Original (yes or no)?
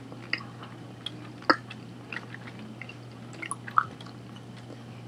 yes